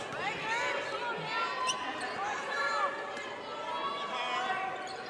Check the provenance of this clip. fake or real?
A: real